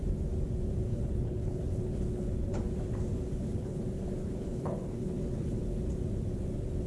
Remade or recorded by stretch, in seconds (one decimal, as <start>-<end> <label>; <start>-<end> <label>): 0.0-0.9 recorded; 0.9-2.6 remade; 2.6-3.3 recorded; 3.3-3.8 remade; 3.8-4.2 recorded; 4.2-5.7 remade; 5.7-6.9 recorded